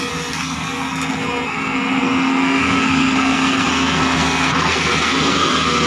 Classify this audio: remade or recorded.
remade